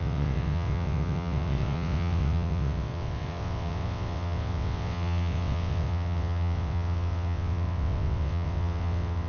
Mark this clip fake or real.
fake